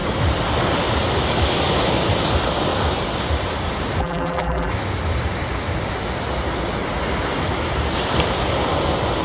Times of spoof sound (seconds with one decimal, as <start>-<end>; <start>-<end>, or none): 4.0-4.7